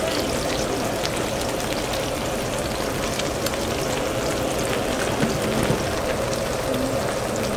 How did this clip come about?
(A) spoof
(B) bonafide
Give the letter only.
B